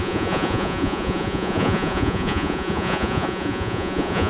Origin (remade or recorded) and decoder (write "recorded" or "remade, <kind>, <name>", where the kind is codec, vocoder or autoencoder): remade, vocoder, Vocos